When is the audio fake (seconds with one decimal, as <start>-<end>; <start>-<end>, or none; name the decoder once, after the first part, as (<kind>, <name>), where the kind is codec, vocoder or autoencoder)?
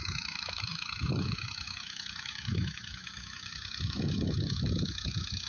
0.0-5.5 (autoencoder, DAC-VAE)